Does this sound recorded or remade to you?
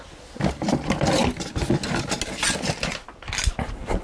recorded